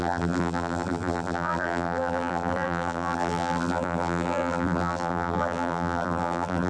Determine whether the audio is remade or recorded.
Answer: remade